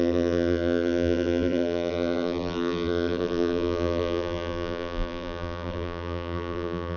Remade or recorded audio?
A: remade